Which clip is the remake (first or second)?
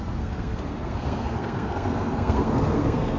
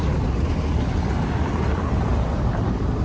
first